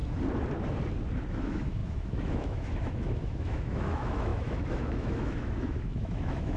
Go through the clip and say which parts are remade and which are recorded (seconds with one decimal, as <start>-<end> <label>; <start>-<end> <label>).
0.0-1.3 recorded; 1.3-6.6 remade